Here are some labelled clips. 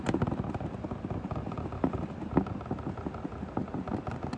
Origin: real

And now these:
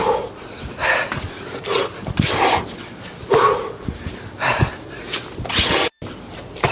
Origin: real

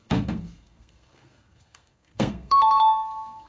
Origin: fake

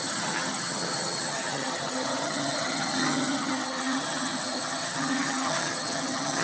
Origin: fake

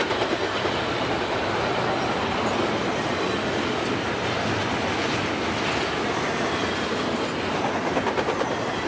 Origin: real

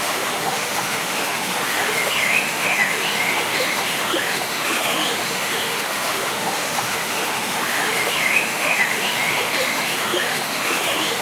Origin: fake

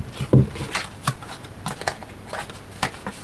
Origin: real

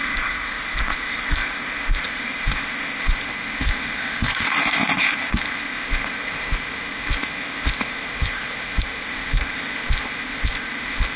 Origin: fake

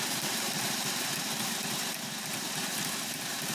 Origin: fake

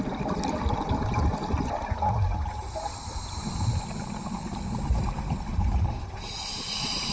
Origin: fake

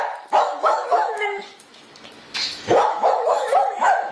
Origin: fake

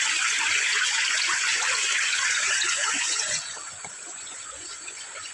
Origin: fake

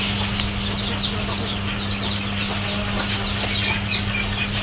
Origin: real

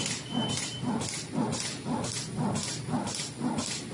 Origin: real